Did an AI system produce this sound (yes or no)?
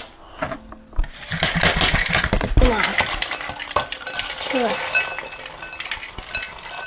no